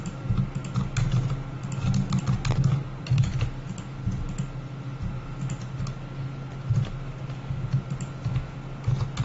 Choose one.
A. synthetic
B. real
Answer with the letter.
B